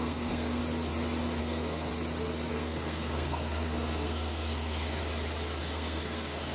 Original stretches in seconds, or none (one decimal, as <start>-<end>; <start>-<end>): 0.6-1.4; 1.9-2.5; 5.0-5.6